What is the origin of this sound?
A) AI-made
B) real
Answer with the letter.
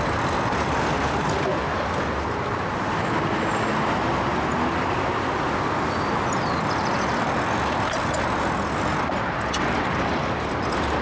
B